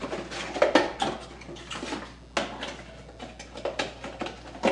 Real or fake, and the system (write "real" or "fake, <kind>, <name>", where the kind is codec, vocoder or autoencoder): real